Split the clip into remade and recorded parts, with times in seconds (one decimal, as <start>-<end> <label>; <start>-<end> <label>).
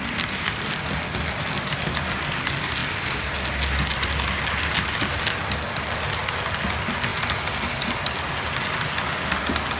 0.0-9.8 recorded